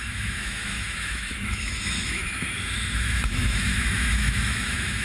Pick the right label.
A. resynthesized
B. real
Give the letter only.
A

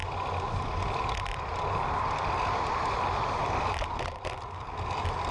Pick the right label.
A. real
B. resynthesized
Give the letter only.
A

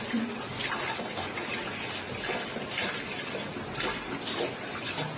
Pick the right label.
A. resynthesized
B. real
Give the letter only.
B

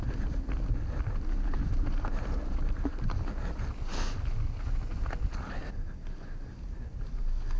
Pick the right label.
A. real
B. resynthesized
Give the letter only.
A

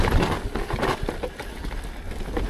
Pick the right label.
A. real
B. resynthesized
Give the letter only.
A